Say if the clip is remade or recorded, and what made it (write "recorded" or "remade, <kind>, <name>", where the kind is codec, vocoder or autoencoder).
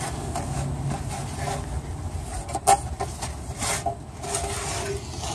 recorded